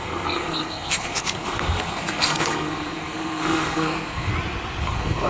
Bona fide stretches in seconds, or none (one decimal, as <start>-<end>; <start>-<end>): 4.3-4.8